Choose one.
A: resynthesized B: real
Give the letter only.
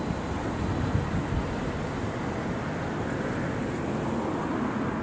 B